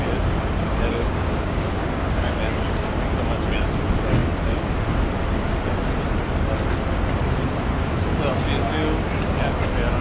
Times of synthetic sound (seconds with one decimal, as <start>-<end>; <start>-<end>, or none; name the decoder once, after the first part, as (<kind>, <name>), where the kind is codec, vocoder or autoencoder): 0.9-2.3 (codec, DAC)